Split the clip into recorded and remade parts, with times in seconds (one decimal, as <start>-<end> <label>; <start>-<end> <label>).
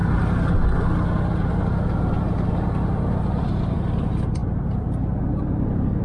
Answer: 0.0-1.3 recorded; 1.3-6.0 remade